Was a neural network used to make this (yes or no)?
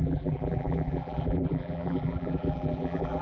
yes